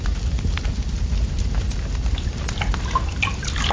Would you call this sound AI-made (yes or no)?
no